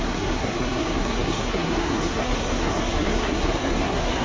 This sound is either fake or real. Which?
fake